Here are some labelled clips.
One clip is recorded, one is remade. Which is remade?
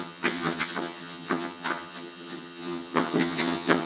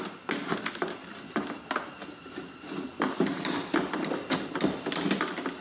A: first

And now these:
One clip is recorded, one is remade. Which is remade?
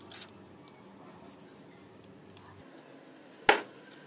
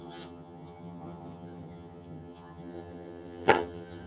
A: second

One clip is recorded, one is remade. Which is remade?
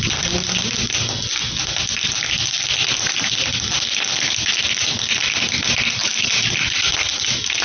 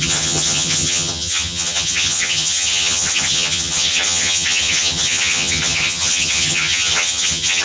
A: second